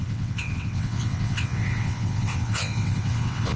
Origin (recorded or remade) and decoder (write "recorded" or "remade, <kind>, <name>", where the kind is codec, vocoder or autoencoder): remade, vocoder, WaveNeXt